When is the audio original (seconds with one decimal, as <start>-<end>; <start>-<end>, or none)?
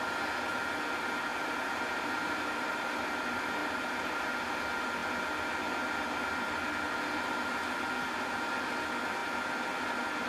0.0-1.3; 3.1-3.6; 4.3-10.3